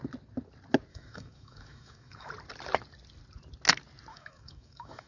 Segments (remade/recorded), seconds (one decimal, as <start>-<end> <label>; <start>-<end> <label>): 0.0-0.9 recorded; 0.9-2.3 remade; 2.3-4.1 recorded; 4.1-5.1 remade